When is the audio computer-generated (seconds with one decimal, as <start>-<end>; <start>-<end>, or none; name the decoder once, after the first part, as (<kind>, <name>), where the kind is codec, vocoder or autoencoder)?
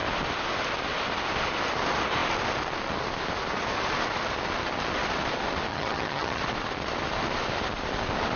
5.7-6.4 (vocoder, HiFi-GAN)